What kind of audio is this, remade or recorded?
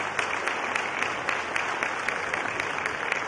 recorded